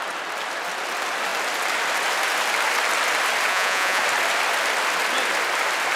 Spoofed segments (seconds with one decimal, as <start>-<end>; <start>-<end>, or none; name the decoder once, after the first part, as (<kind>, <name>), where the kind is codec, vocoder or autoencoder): 3.5-4.0 (vocoder, Vocos)